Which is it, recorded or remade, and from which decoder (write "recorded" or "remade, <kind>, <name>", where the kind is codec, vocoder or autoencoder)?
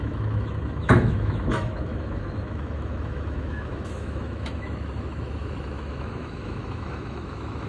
remade, autoencoder, DAC-VAE